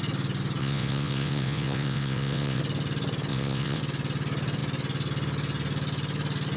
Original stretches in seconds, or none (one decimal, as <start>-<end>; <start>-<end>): 0.0-0.6; 2.6-3.3; 3.8-6.6